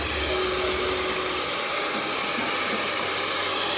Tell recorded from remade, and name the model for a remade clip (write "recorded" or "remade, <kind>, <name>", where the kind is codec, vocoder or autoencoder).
recorded